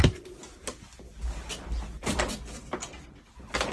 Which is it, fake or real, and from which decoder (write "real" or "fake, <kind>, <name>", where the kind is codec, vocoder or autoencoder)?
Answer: real